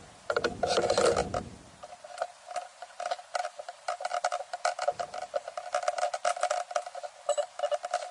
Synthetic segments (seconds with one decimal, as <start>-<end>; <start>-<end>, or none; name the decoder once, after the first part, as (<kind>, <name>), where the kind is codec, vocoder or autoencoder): none